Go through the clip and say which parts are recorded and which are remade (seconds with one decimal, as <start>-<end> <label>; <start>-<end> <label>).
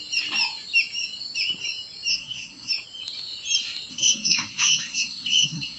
0.0-2.1 recorded; 2.1-2.7 remade; 2.7-3.9 recorded; 3.9-5.8 remade